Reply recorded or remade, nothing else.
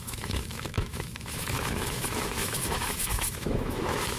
remade